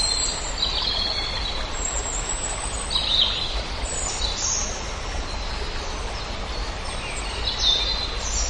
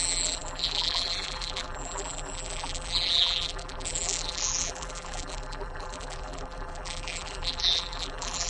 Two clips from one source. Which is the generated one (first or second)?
second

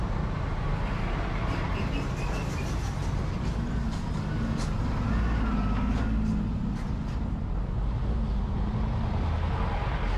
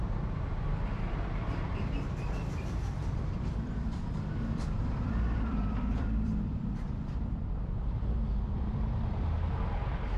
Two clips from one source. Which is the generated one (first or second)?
second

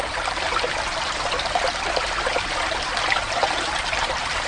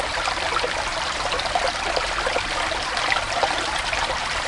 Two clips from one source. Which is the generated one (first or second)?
second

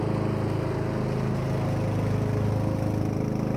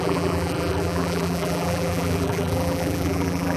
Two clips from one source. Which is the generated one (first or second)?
second